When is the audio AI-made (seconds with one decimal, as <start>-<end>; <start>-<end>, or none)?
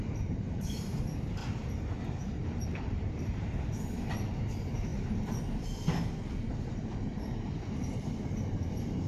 0.0-1.4; 2.2-4.9; 8.5-9.1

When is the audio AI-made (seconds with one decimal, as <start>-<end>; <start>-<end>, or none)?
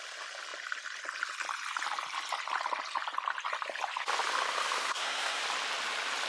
4.8-5.4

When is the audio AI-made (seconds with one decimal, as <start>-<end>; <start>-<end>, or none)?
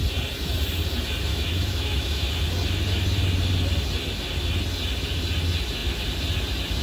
1.3-2.3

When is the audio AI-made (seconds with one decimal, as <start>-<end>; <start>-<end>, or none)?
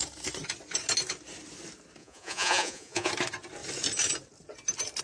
2.0-3.1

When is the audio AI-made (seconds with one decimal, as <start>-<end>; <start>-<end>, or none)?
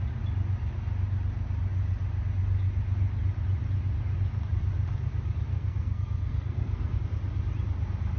5.5-7.0